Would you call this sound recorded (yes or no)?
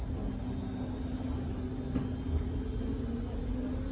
yes